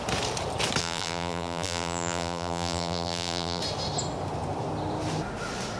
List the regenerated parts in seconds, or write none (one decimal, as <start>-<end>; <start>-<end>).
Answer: 0.8-3.6